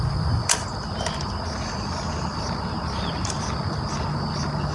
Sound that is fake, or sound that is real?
real